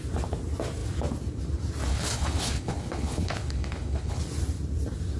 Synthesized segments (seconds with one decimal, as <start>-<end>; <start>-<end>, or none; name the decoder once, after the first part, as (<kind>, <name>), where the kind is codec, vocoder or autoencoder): 1.9-4.2 (codec, HILCodec)